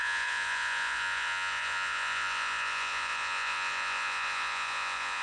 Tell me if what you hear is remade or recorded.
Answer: remade